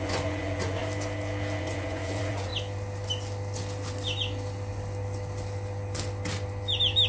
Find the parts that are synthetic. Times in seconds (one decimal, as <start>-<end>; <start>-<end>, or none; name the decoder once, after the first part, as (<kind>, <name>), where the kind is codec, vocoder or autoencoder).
0.0-0.8 (vocoder, Vocos); 1.6-2.5